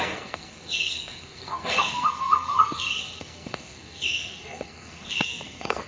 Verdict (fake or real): fake